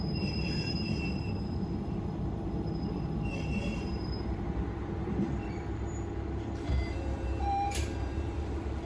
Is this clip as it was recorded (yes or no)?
no